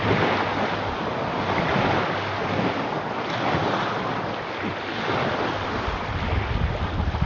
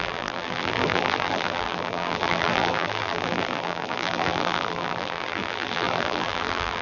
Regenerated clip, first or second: second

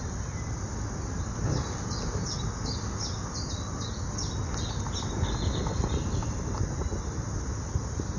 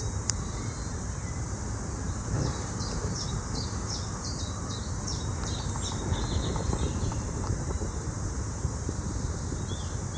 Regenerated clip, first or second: second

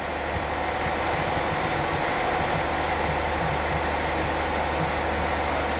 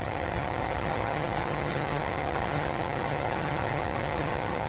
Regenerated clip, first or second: second